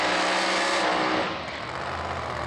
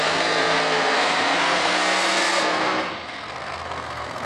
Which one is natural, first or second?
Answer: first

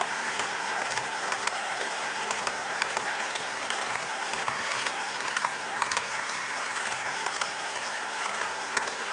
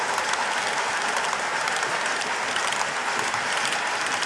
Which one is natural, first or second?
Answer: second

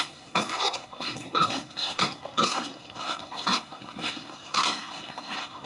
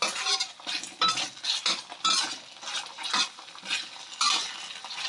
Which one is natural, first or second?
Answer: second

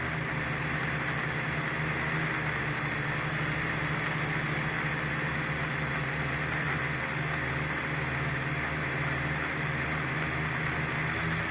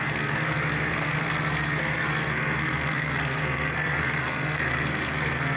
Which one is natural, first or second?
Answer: first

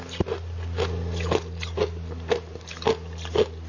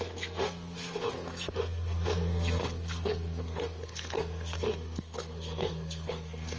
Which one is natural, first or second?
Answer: first